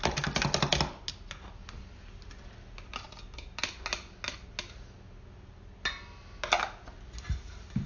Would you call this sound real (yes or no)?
yes